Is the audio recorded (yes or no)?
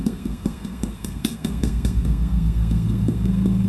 no